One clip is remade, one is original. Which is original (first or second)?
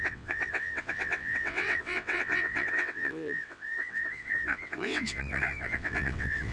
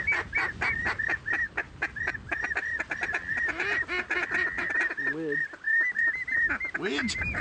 second